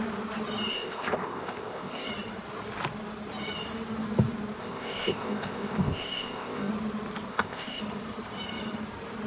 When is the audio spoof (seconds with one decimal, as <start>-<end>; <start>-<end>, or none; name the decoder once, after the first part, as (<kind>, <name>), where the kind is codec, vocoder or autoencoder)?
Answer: 0.7-2.1 (codec, ZipCodec); 4.6-6.7; 7.3-7.8